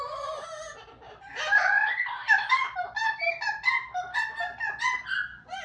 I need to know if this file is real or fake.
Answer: real